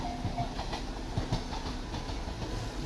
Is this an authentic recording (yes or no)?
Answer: yes